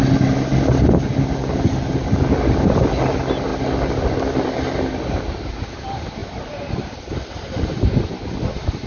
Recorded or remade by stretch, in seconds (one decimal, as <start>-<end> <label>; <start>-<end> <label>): 0.0-8.9 recorded